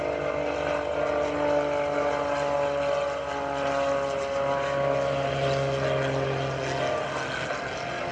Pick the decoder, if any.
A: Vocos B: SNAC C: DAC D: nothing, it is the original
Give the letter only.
D